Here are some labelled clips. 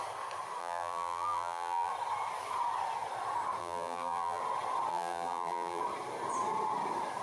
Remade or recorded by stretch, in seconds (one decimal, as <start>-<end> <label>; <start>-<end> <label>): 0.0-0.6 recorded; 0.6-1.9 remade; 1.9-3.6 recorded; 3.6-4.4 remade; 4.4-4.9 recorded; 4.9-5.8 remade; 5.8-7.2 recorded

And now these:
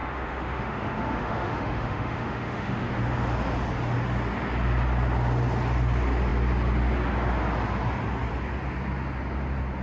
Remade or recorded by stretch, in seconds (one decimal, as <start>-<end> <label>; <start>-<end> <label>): 0.0-2.9 remade; 2.9-9.8 recorded

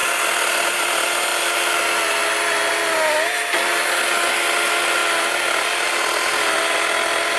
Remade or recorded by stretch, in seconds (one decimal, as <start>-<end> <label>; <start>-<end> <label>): 0.0-7.4 recorded